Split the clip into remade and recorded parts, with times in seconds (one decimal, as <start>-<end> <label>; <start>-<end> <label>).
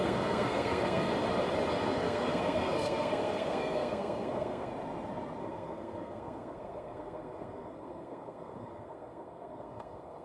0.0-1.1 remade; 1.1-1.7 recorded; 1.7-4.7 remade; 4.7-5.4 recorded; 5.4-10.2 remade